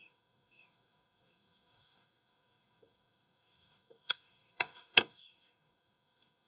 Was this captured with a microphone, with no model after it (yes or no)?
no